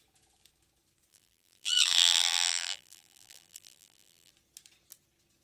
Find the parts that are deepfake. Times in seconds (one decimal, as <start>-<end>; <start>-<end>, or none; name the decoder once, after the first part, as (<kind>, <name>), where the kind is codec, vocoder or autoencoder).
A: 1.1-4.3 (vocoder, BigVGAN v2)